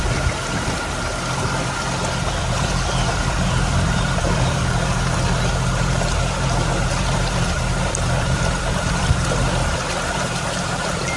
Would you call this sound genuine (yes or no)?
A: no